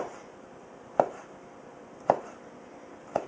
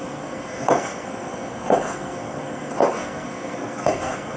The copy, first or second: second